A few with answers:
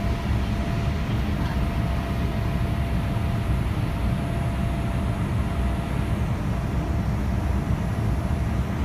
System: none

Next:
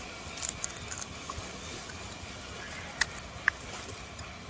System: none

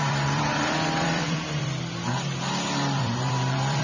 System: vocoder, BigVGAN v2